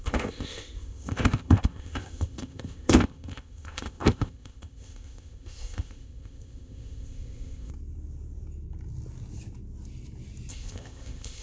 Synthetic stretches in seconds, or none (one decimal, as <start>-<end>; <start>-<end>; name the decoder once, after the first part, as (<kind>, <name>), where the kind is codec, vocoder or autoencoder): 0.0-7.7 (codec, ZipCodec); 10.5-11.4